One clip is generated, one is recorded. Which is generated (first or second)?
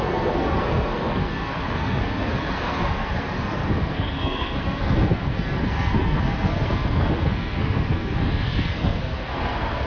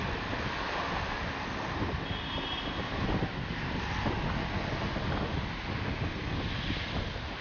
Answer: first